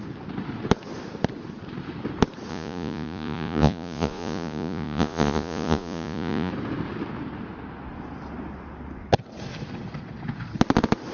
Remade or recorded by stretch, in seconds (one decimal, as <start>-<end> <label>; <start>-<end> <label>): 0.0-2.5 recorded; 2.5-6.5 remade; 6.5-11.1 recorded